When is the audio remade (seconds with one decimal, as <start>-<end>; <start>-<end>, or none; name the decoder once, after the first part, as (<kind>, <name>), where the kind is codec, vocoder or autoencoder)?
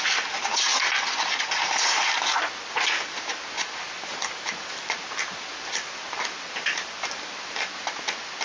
none